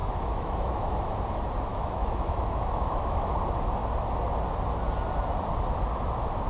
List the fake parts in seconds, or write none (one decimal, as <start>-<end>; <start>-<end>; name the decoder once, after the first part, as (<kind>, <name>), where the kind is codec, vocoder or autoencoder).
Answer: 0.0-1.2 (autoencoder, DAC-VAE); 1.7-3.3